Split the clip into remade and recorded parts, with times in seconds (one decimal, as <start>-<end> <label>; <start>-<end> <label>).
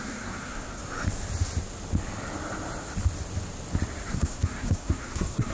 0.0-0.8 remade; 0.8-4.1 recorded; 4.1-5.5 remade